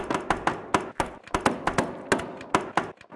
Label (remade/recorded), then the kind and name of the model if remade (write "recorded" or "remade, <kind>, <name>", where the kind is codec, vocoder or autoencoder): recorded